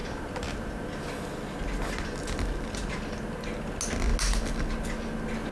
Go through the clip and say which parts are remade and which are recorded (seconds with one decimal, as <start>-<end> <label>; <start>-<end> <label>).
0.0-5.5 recorded